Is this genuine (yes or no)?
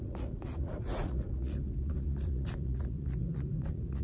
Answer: no